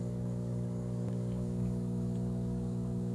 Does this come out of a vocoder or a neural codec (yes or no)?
yes